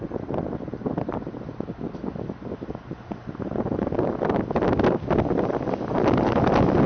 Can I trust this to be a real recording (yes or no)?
yes